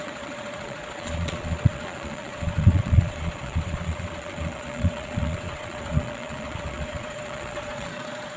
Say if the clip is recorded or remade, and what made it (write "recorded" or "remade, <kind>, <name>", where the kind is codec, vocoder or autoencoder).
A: remade, vocoder, Vocos